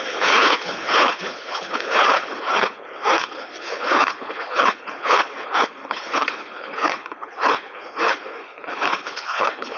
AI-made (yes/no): yes